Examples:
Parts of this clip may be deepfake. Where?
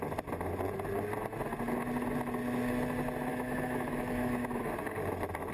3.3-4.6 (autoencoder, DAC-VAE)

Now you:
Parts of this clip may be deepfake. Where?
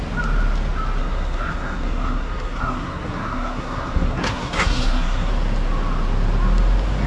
1.0-5.3 (codec, SNAC)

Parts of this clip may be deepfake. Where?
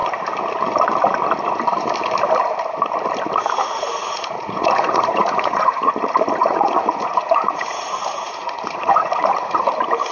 3.6-5.9 (vocoder, Vocos); 6.4-9.7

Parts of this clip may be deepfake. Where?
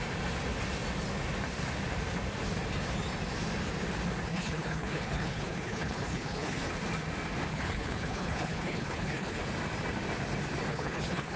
4.3-6.7 (codec, HILCodec); 7.5-9.4; 10.7-11.4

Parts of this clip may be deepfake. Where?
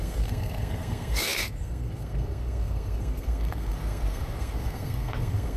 0.0-5.6 (codec, SNAC)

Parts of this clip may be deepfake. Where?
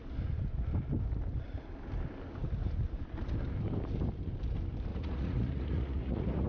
4.9-6.5 (vocoder, Vocos)